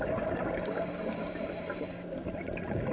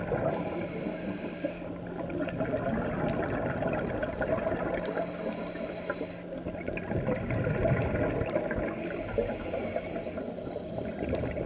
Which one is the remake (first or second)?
first